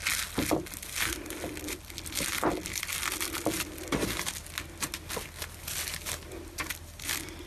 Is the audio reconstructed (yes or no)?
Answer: no